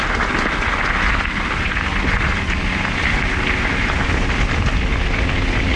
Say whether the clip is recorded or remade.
recorded